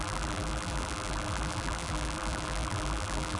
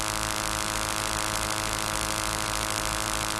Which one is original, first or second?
second